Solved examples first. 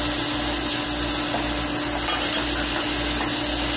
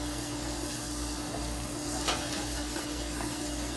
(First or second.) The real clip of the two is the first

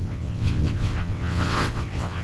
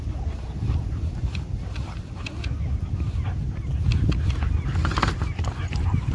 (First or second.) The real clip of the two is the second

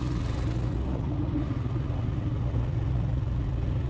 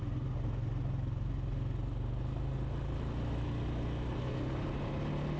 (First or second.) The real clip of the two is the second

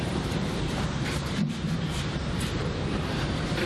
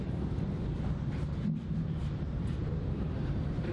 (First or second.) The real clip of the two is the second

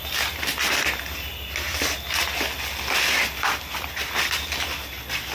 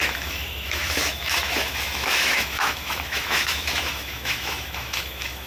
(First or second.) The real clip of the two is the first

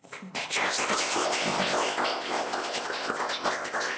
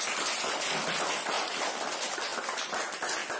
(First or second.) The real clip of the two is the second